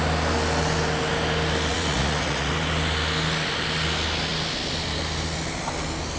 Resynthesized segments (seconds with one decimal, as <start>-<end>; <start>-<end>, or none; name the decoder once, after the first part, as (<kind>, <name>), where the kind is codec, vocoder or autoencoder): 1.7-2.5 (vocoder, Vocos)